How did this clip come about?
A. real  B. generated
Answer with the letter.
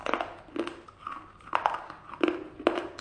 A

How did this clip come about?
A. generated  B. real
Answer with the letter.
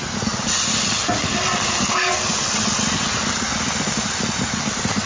B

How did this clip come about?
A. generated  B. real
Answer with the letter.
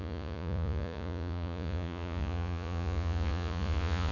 A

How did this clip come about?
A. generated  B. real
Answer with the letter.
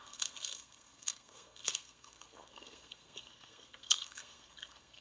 A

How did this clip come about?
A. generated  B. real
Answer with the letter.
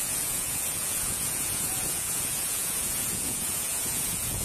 A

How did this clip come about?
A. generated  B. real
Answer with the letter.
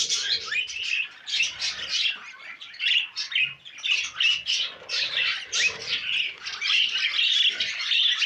B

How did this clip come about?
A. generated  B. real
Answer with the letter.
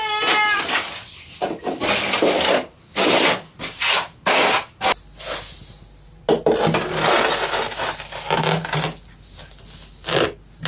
B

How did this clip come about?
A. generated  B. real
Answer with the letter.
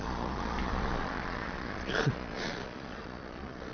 A